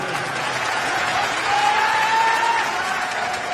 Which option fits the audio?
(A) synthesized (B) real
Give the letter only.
A